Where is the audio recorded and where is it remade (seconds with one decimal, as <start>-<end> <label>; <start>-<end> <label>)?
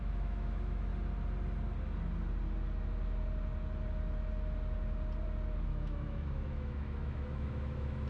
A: 0.0-0.9 remade; 0.9-5.7 recorded; 5.7-8.1 remade